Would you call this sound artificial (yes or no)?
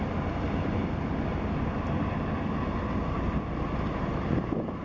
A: no